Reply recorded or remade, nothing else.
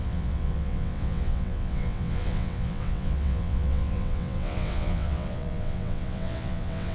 remade